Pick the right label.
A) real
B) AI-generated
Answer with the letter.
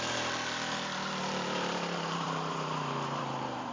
B